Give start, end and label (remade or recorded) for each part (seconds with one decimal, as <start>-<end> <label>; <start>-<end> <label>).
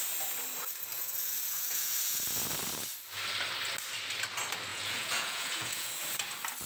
0.0-0.9 recorded; 0.9-2.2 remade; 2.2-4.7 recorded; 4.7-5.9 remade; 5.9-6.7 recorded